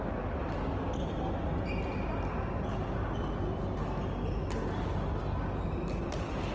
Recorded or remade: recorded